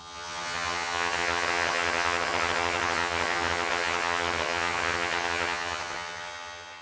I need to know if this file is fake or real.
fake